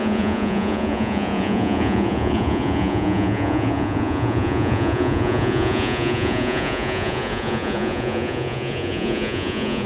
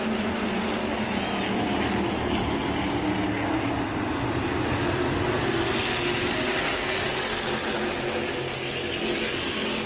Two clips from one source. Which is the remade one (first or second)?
first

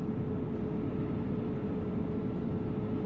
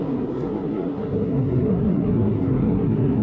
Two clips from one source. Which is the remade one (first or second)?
second